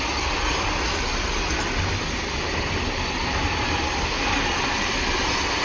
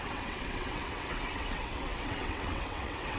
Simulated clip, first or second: second